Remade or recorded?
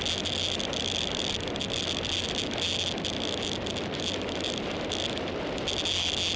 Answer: recorded